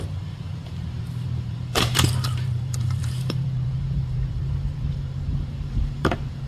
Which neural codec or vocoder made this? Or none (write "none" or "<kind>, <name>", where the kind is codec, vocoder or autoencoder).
vocoder, BigVGAN v2